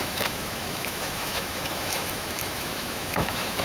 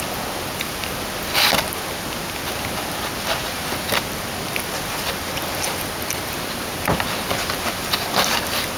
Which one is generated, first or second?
first